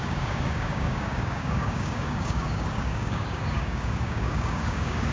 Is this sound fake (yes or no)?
yes